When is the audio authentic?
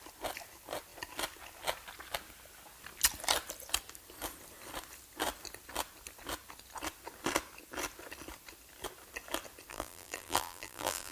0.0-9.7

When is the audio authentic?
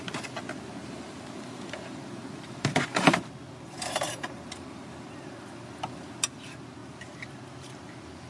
0.0-0.8; 5.2-8.3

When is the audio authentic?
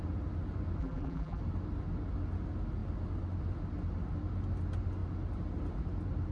0.0-0.8; 1.4-6.3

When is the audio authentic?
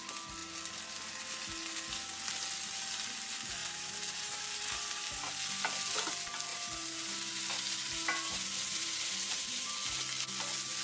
0.0-3.6; 5.2-6.5; 9.7-10.8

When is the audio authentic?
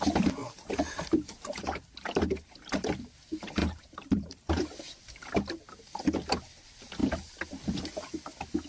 0.0-0.4; 2.7-3.6; 4.6-8.7